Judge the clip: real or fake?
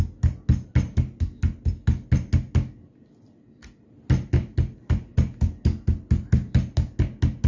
real